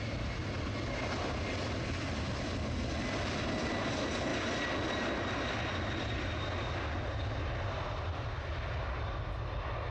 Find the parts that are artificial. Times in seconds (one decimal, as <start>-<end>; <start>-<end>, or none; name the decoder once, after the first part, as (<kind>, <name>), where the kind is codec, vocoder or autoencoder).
none